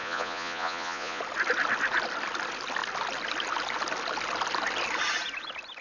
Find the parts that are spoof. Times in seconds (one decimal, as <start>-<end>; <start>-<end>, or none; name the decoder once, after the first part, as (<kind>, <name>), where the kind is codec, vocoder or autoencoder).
0.0-1.2 (vocoder, Vocos)